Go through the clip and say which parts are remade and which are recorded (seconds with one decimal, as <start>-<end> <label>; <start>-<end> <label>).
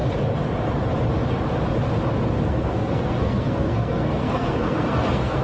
0.0-2.4 recorded; 2.4-5.4 remade